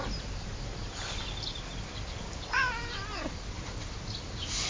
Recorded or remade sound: recorded